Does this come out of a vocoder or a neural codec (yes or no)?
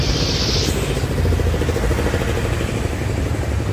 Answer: no